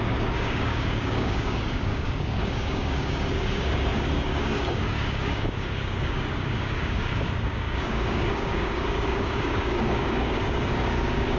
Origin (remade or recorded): remade